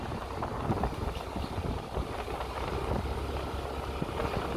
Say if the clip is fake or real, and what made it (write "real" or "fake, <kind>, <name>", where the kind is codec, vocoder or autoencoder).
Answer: real